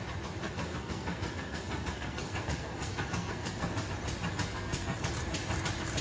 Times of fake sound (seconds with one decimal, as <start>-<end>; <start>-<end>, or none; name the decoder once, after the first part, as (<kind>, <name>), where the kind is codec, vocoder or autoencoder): 0.4-3.9 (codec, SNAC); 4.5-5.1